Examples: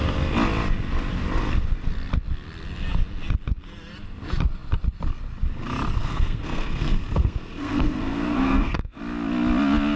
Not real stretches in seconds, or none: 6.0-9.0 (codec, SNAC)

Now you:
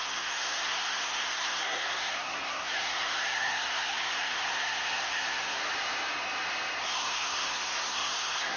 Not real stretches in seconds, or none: 0.0-5.6 (codec, SNAC); 6.8-8.6

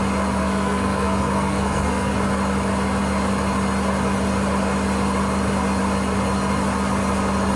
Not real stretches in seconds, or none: 0.4-2.1 (codec, SNAC)

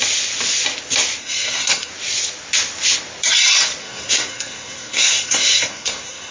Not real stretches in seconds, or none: 1.2-1.9 (codec, SNAC); 3.8-6.3

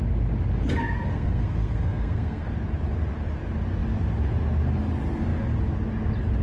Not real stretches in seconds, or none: 0.8-2.5 (codec, SNAC)

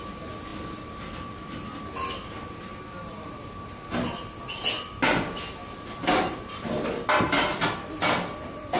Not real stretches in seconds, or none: none